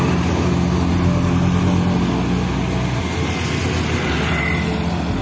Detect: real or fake real